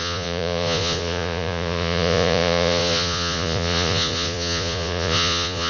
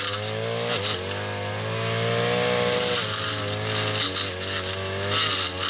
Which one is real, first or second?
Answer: second